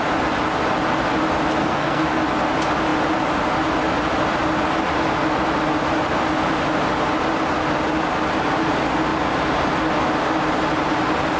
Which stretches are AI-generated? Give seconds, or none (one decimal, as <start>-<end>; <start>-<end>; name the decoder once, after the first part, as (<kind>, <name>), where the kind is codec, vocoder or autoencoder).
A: 1.6-2.2 (codec, SNAC)